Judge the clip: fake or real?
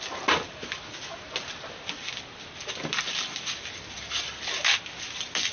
real